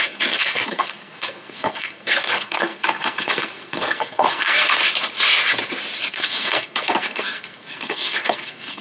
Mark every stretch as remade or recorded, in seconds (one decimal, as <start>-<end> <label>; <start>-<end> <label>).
0.0-4.8 remade; 4.8-6.1 recorded; 6.1-8.8 remade